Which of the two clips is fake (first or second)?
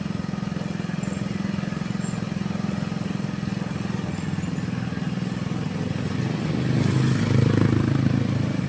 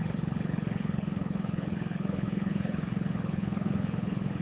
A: second